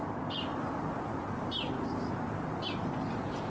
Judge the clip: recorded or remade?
recorded